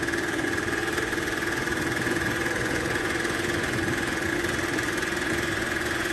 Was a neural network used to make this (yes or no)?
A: yes